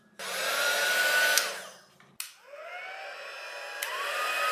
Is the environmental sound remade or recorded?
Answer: recorded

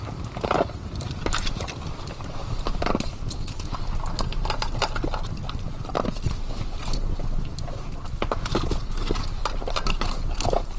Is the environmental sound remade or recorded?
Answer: recorded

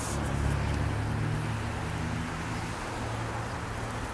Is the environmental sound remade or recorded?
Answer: recorded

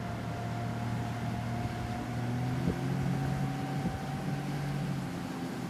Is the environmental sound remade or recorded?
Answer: recorded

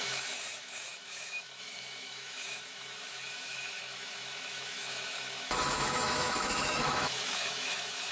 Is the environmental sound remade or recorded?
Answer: remade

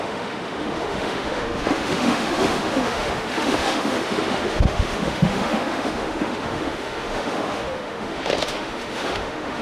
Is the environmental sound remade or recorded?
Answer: remade